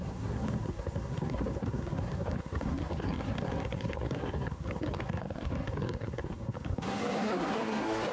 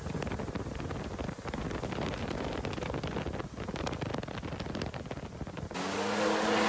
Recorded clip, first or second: second